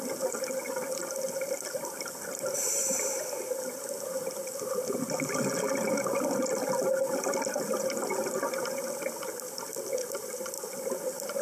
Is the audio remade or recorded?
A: recorded